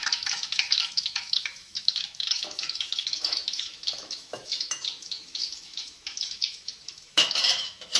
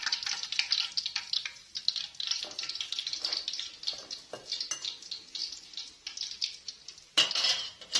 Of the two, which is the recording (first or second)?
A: second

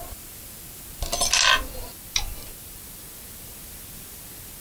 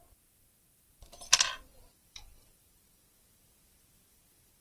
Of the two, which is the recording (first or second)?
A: first